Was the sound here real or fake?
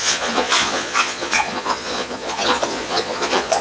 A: fake